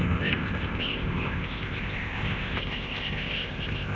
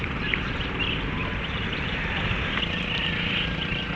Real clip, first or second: second